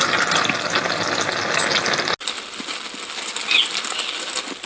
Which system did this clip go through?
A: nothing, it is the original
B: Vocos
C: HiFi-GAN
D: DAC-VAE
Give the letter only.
A